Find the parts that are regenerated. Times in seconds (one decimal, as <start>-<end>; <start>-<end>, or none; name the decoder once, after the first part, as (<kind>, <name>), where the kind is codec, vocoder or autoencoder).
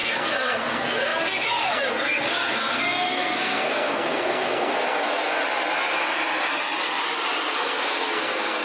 0.0-5.4 (codec, SNAC); 7.5-8.6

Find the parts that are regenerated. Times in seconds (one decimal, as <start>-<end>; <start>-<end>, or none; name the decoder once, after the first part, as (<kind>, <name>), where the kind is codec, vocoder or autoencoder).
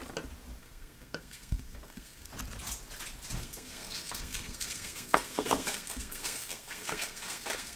0.6-2.3 (codec, SNAC); 3.4-7.8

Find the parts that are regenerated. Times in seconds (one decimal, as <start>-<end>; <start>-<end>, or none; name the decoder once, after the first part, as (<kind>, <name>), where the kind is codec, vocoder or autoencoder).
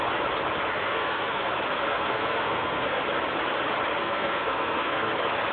0.7-1.4 (codec, SNAC); 1.9-3.0; 4.0-5.1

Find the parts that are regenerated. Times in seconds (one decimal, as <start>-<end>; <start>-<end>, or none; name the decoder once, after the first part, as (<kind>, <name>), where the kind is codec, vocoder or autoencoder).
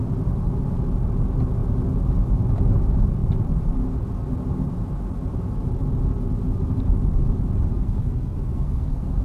7.7-9.2 (codec, SNAC)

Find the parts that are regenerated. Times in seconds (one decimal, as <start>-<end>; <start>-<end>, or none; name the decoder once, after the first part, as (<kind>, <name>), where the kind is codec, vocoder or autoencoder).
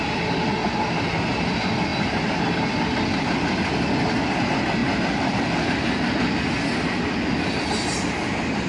none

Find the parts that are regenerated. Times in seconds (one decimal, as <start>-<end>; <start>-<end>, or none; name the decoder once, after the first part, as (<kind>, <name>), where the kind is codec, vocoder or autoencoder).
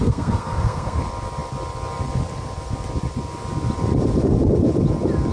0.0-1.0 (codec, SNAC)